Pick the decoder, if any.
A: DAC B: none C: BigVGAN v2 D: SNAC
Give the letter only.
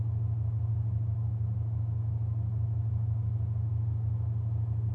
B